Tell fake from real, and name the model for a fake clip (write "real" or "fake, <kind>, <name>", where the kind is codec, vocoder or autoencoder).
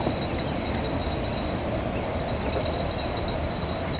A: real